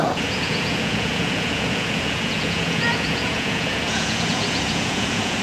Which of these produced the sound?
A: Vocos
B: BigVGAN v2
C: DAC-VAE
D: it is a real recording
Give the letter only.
A